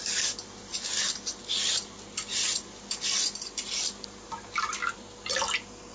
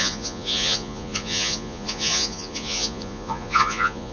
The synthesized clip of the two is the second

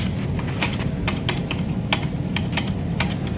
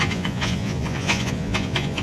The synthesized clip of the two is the second